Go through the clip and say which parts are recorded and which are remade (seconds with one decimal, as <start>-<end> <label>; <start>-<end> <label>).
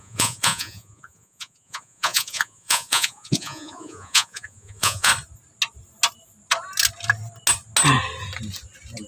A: 0.0-5.1 remade; 5.1-9.1 recorded